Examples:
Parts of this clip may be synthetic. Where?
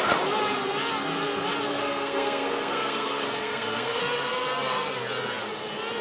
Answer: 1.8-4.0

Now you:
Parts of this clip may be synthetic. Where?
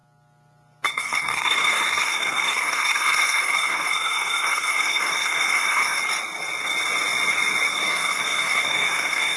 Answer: 0.9-6.0; 7.7-9.4